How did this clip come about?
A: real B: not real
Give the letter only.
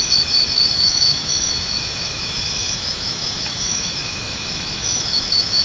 B